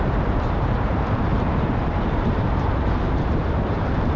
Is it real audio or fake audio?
fake